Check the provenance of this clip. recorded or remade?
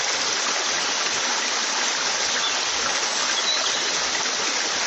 recorded